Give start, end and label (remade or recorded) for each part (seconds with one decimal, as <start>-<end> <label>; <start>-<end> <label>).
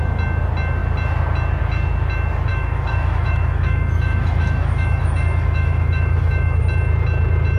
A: 0.0-2.5 recorded; 2.5-6.6 remade; 6.6-7.6 recorded